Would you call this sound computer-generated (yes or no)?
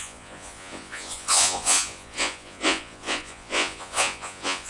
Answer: yes